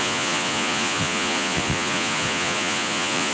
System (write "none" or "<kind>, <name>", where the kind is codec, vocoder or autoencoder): vocoder, Vocos